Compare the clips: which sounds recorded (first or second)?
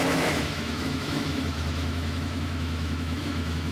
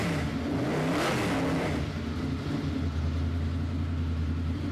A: second